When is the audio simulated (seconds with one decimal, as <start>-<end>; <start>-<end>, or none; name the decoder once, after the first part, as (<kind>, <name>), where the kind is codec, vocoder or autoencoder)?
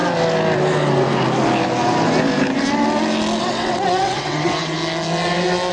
3.4-4.8 (vocoder, WaveNeXt)